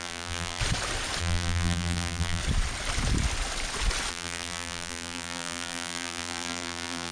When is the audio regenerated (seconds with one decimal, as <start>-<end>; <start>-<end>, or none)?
0.0-0.6; 1.2-2.4; 4.1-7.1